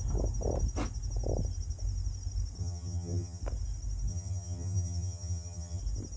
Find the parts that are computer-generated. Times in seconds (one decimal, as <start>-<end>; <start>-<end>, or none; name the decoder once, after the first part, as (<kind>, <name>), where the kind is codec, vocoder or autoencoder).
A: 2.6-3.4 (vocoder, HiFi-GAN); 4.1-5.8